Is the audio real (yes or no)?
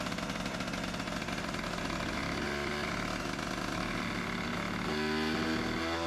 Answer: yes